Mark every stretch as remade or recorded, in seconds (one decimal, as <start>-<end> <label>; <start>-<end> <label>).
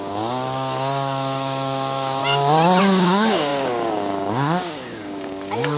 0.0-2.2 remade; 2.2-2.8 recorded; 2.8-5.8 remade